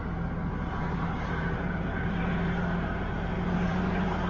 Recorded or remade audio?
remade